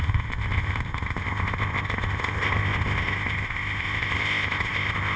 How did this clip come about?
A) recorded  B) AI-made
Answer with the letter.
B